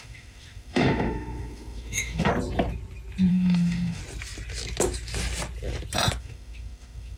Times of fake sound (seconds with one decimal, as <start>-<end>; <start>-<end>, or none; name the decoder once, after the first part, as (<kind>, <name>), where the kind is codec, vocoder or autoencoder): 0.0-2.3 (autoencoder, DAC-VAE); 3.3-4.0; 6.2-7.2